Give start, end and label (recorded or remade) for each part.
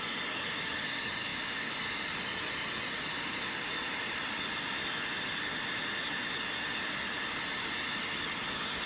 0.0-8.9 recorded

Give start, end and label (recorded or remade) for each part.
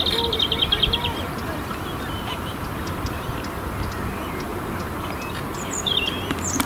0.0-4.5 remade; 4.5-5.0 recorded; 5.0-6.7 remade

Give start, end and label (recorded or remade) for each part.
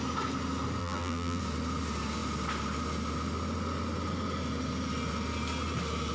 0.0-0.8 recorded; 0.8-1.4 remade; 1.4-6.1 recorded